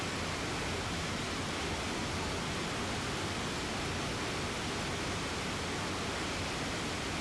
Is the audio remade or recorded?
recorded